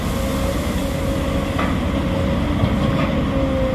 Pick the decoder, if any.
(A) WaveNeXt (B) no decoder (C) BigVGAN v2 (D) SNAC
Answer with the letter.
B